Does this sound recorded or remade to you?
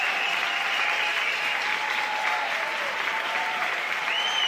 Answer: recorded